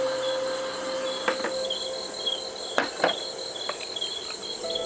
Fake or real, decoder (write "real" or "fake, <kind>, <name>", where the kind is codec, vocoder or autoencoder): real